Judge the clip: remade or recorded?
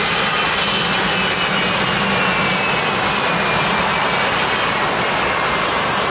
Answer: recorded